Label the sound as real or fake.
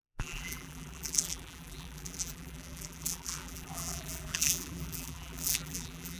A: fake